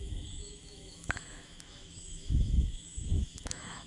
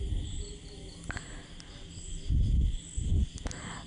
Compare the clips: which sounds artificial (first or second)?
first